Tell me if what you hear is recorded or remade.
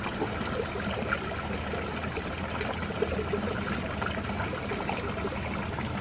recorded